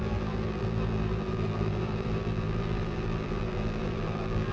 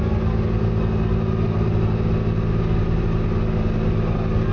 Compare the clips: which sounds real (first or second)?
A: second